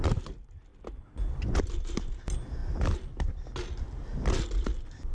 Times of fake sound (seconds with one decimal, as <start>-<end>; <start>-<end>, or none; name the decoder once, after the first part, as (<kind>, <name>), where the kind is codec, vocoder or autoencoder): none